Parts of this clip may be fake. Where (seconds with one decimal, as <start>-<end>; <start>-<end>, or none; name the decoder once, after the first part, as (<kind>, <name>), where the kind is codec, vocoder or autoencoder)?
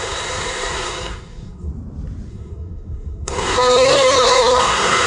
0.0-1.7 (codec, SNAC); 2.3-5.1